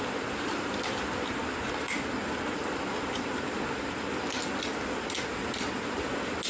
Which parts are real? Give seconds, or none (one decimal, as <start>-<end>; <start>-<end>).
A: 0.0-6.5